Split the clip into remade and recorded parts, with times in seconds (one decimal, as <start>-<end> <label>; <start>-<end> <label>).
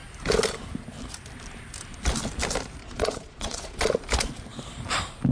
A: 0.0-2.8 recorded; 2.8-3.9 remade; 3.9-5.3 recorded